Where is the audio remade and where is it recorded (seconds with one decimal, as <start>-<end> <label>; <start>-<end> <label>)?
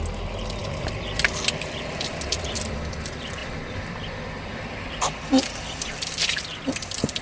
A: 0.0-7.2 remade